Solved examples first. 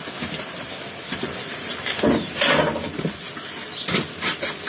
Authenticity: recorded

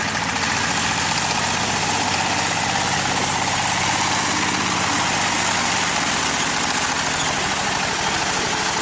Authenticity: recorded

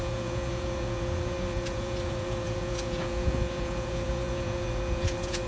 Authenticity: remade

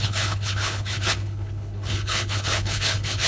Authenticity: remade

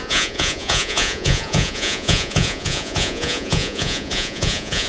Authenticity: remade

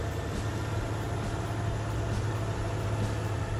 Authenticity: recorded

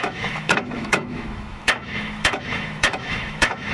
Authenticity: remade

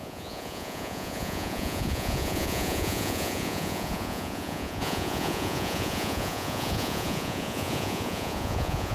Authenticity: remade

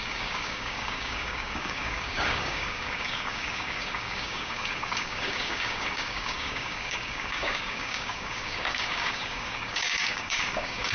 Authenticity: remade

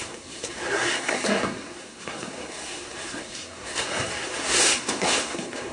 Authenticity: remade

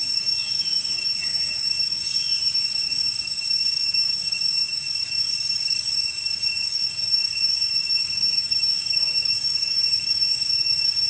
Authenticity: remade